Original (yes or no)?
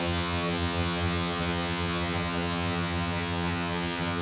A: no